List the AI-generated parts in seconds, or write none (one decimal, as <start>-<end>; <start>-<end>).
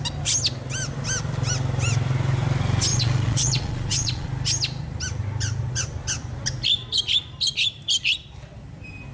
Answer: 2.9-4.3